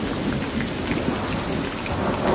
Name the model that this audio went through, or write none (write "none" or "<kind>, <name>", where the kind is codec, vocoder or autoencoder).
none